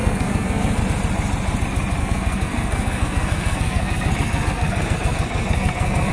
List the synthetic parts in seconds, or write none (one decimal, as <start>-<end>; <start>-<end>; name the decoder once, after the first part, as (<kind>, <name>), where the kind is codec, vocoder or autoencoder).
0.0-0.8 (codec, SNAC); 2.0-6.1